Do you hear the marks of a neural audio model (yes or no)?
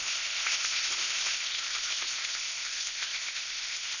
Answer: yes